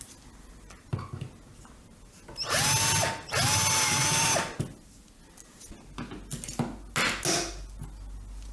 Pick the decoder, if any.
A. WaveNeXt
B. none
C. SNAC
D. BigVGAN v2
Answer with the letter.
B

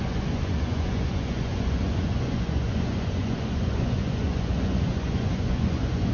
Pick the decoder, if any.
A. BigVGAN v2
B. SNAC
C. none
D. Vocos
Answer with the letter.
D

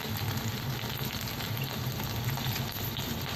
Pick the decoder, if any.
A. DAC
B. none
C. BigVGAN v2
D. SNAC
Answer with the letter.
B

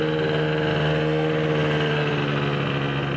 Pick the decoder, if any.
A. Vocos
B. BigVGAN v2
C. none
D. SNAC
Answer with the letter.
C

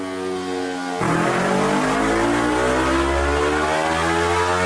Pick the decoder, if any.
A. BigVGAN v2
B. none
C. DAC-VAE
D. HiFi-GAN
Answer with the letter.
B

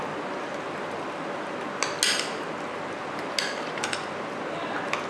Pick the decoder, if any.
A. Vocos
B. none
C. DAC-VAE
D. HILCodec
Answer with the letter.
B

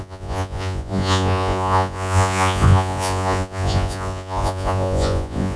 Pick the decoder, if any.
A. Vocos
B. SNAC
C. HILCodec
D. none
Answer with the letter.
A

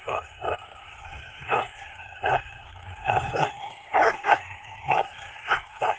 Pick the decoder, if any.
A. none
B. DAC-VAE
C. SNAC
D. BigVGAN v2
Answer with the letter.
C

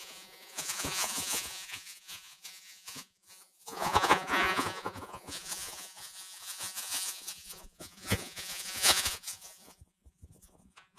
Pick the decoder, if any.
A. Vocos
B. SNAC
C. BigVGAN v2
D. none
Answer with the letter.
A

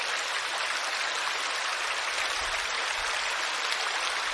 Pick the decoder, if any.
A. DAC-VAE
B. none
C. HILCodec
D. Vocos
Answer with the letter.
B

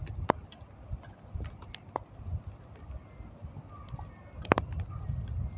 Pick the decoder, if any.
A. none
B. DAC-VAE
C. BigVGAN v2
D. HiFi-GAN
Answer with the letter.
A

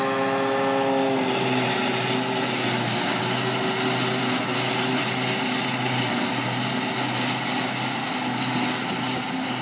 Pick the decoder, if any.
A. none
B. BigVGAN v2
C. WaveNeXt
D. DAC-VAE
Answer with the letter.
A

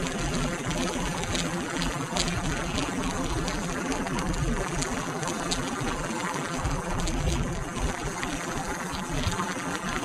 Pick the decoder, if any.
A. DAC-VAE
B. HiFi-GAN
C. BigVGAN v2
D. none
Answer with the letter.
C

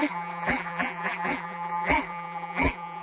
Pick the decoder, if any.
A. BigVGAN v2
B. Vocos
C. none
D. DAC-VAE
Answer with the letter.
A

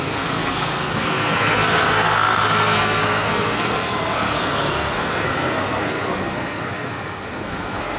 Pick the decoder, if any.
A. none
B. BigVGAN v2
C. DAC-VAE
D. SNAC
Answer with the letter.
D